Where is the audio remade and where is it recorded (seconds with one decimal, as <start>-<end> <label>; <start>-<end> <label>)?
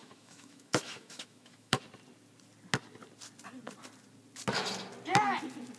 0.0-1.8 remade; 1.8-5.8 recorded